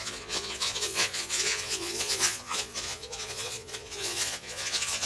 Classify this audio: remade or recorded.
remade